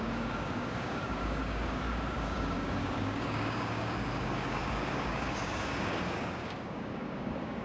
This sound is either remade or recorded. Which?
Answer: remade